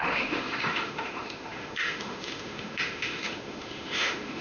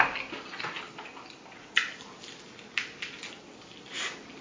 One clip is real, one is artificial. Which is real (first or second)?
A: second